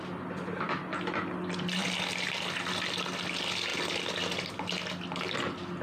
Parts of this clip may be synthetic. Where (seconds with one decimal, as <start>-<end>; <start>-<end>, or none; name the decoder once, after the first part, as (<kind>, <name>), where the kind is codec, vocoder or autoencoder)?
none

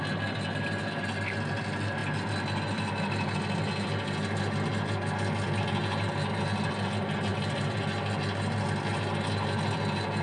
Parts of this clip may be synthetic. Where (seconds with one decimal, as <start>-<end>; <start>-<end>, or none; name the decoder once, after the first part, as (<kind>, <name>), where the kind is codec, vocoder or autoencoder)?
none